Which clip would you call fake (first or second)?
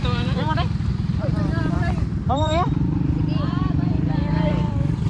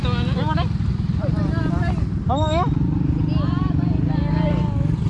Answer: first